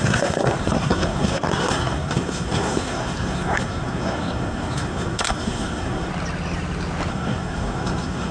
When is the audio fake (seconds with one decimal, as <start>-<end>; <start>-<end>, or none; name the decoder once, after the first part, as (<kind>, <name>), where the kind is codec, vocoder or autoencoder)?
0.0-6.1 (codec, SNAC); 7.1-8.3